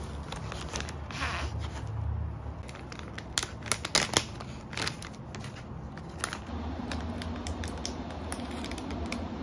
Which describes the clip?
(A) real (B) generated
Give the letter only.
A